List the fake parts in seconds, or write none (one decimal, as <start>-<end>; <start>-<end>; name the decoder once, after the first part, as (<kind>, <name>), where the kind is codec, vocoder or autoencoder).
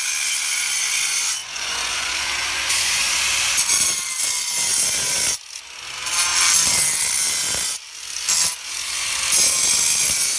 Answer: 1.4-3.1 (vocoder, Vocos)